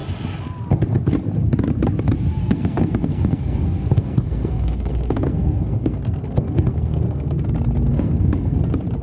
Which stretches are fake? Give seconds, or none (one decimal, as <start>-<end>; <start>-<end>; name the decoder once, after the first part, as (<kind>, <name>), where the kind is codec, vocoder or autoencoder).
2.4-7.4 (codec, SNAC); 7.9-8.6